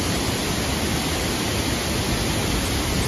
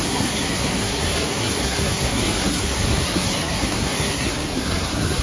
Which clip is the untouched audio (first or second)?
first